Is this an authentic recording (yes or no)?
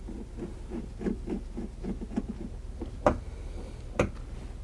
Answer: yes